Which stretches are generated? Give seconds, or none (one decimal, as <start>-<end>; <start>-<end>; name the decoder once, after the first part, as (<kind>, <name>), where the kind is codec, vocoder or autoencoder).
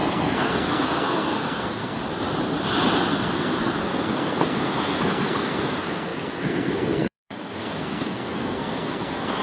0.0-2.0 (codec, SNAC); 3.1-9.4